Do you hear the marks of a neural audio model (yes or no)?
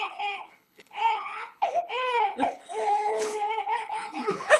yes